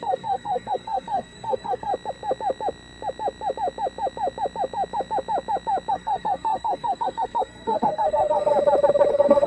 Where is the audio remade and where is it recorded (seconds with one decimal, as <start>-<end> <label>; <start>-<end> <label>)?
0.0-1.9 remade; 1.9-5.9 recorded; 5.9-8.5 remade; 8.5-9.1 recorded; 9.1-9.5 remade